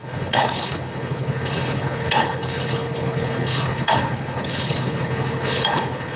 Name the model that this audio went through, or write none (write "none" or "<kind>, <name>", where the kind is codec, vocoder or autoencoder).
codec, HILCodec